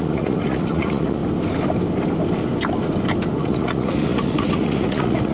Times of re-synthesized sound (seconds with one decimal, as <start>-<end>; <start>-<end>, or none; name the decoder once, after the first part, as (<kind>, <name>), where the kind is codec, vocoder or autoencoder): 0.0-1.2 (vocoder, Vocos); 3.4-5.3

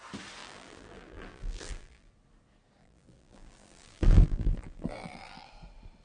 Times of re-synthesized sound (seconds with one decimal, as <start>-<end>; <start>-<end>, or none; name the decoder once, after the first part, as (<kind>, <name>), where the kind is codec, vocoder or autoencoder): 0.4-2.1 (vocoder, BigVGAN v2); 2.8-5.5

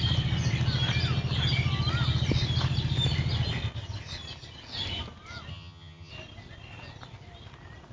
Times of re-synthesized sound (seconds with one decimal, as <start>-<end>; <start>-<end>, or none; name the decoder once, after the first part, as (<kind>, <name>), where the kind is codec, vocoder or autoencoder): 5.5-6.1 (vocoder, HiFi-GAN)

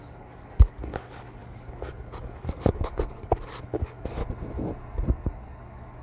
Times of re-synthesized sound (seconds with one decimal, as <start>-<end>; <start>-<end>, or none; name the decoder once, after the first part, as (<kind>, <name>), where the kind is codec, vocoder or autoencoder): 0.0-4.2 (codec, DAC); 5.1-6.0

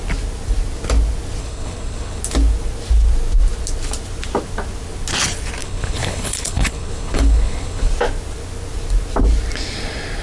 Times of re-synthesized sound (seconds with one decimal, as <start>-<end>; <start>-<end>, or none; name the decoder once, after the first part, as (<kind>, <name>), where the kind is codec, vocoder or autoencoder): 1.4-2.2 (codec, HILCodec); 5.6-7.9

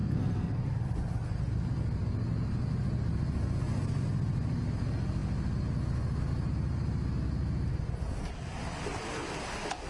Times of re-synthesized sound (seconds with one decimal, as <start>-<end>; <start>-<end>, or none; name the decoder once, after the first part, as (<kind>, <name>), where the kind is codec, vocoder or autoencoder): 0.0-0.6 (codec, SNAC)

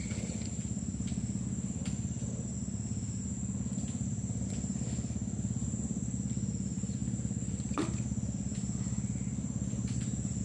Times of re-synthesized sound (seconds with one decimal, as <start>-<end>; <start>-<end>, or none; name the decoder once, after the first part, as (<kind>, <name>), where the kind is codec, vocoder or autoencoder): none